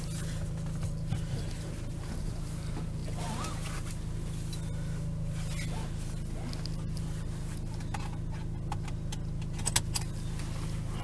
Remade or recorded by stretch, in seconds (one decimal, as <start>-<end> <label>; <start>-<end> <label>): 0.0-11.0 recorded